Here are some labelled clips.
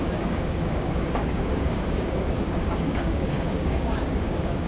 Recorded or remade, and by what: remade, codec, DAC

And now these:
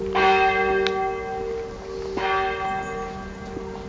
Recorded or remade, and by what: recorded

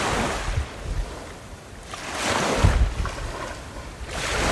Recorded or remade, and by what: recorded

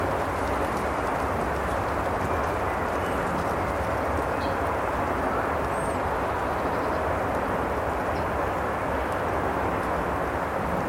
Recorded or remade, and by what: recorded